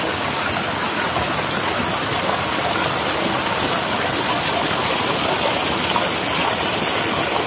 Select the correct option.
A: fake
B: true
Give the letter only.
B